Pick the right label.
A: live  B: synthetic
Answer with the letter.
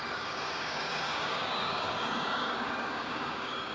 B